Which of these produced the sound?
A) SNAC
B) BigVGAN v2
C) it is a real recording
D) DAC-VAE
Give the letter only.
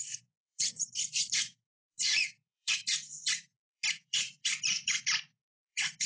B